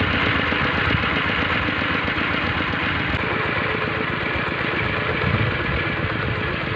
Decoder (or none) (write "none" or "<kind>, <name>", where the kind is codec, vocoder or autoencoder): none